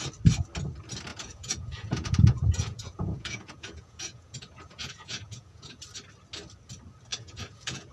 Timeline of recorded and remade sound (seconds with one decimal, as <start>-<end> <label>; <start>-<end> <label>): 0.0-1.1 recorded; 1.1-5.8 remade; 5.8-7.1 recorded; 7.1-7.9 remade